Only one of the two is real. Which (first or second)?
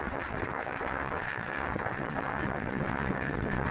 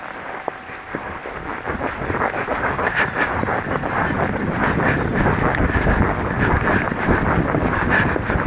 second